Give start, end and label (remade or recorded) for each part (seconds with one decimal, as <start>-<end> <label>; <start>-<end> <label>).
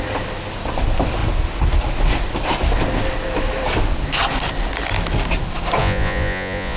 0.0-5.8 recorded; 5.8-6.8 remade